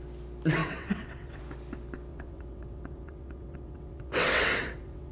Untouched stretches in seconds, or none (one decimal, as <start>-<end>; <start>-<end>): 0.0-0.6; 1.4-2.1